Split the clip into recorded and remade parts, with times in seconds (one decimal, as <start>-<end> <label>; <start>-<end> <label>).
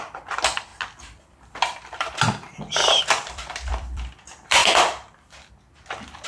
0.0-0.7 remade; 0.7-3.0 recorded; 3.0-6.3 remade